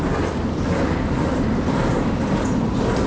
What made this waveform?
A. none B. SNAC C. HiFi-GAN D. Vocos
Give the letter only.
A